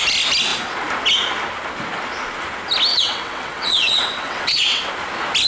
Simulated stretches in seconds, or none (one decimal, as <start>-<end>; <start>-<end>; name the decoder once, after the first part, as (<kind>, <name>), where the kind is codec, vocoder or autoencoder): 2.9-4.9 (vocoder, WaveNeXt)